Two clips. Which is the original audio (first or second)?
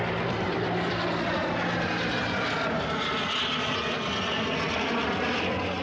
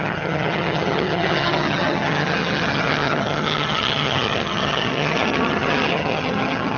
first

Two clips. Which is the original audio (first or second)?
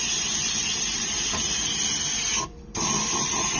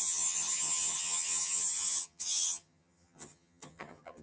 first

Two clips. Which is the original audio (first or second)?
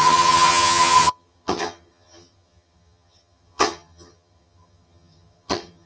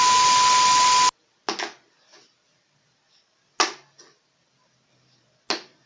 second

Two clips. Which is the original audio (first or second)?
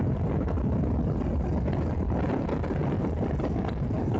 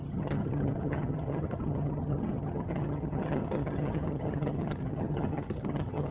first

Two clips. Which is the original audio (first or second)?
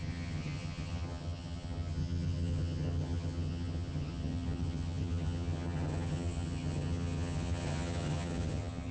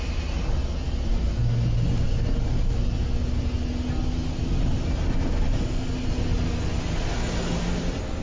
second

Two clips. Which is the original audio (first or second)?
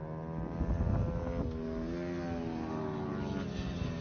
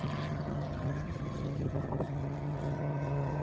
first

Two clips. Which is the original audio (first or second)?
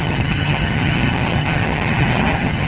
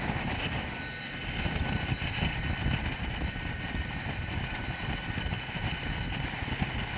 second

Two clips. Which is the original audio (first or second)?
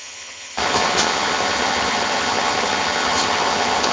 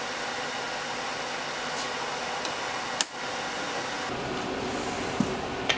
second